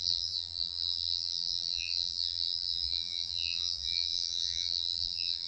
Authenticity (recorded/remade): remade